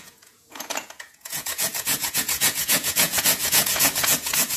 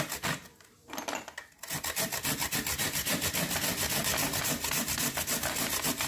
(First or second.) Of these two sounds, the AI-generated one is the first